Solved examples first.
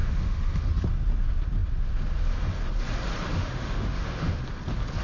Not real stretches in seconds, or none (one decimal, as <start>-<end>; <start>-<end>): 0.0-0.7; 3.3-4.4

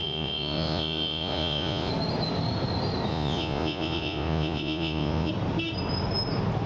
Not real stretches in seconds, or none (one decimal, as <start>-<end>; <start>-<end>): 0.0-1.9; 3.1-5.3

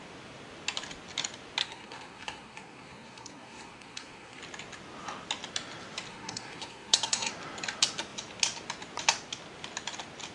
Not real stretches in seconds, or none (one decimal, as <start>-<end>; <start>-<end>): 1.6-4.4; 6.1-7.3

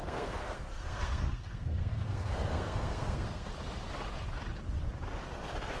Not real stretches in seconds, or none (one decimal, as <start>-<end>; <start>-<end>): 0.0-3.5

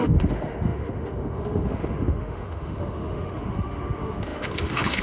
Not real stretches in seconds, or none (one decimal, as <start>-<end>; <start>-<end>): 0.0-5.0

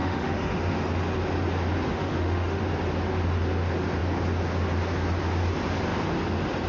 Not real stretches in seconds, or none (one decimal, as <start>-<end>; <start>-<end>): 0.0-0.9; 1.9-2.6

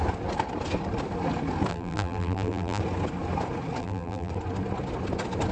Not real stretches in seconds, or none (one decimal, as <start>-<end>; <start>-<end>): 1.7-2.8; 3.8-4.3

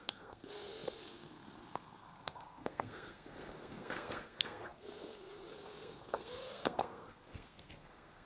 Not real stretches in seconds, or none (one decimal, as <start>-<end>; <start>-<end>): 0.0-8.3